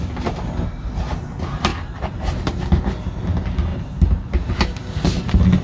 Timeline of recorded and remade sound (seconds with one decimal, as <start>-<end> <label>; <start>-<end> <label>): 0.0-1.7 recorded; 1.7-2.3 remade; 2.3-3.7 recorded; 3.7-4.3 remade; 4.3-5.6 recorded